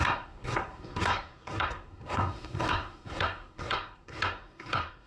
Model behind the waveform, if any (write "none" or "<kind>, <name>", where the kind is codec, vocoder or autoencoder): codec, SNAC